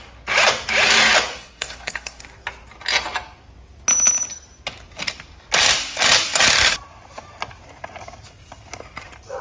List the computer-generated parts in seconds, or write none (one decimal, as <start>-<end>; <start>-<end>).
1.3-2.2